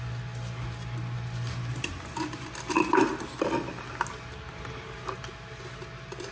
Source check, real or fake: real